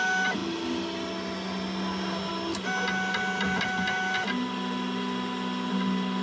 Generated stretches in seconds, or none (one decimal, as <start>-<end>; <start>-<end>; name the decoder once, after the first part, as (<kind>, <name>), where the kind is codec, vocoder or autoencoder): none